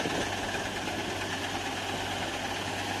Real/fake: real